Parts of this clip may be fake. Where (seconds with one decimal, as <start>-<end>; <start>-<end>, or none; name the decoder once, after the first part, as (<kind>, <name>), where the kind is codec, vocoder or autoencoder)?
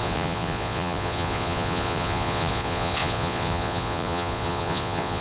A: 0.0-5.2 (vocoder, Vocos)